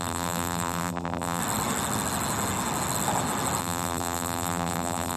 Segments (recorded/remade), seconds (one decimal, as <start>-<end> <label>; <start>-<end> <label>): 0.0-1.4 remade; 1.4-3.6 recorded; 3.6-5.2 remade